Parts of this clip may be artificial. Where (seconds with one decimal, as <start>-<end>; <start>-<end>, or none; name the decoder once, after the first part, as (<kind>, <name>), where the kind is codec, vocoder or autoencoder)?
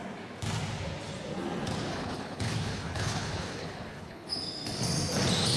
1.9-4.3 (codec, HILCodec)